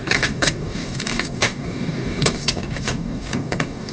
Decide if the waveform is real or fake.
fake